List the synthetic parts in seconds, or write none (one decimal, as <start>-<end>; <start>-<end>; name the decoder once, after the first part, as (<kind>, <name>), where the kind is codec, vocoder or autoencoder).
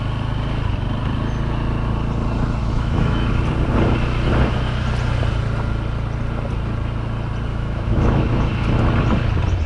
2.6-3.3 (autoencoder, DAC-VAE); 7.5-8.4